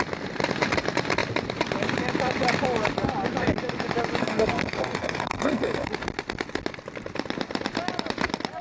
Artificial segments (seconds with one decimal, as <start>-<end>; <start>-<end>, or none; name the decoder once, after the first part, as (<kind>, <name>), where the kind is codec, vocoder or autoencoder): 4.2-5.9 (codec, SNAC)